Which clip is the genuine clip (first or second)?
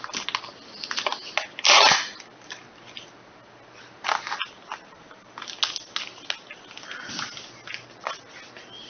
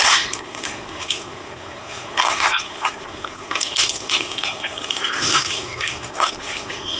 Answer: first